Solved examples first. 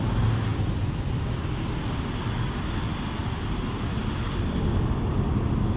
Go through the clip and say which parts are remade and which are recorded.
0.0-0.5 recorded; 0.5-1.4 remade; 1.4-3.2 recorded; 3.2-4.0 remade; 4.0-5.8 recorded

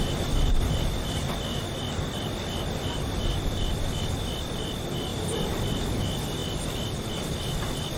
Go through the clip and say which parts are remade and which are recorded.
0.0-6.4 recorded; 6.4-7.1 remade; 7.1-8.0 recorded

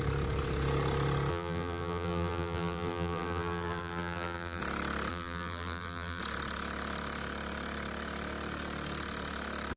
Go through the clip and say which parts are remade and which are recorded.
0.0-1.3 recorded; 1.3-4.6 remade; 4.6-5.1 recorded; 5.1-6.2 remade; 6.2-9.8 recorded

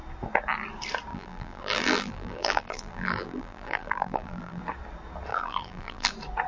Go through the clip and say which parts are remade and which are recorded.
0.0-1.1 recorded; 1.1-4.6 remade; 4.6-5.3 recorded; 5.3-6.1 remade; 6.1-6.5 recorded